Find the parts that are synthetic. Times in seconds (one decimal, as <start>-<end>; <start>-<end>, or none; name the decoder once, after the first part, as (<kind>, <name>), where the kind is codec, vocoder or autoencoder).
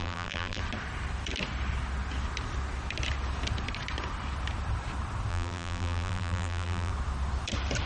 0.0-0.6 (vocoder, BigVGAN v2); 5.3-6.9